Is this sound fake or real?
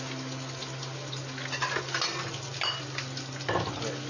real